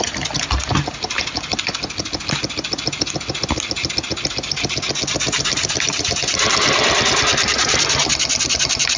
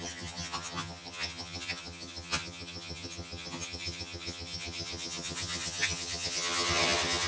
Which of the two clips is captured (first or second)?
first